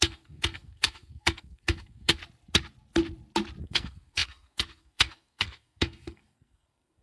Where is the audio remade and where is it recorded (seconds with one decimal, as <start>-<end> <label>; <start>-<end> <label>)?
0.0-2.2 remade; 2.2-3.6 recorded; 3.6-7.0 remade